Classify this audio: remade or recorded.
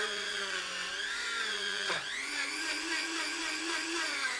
remade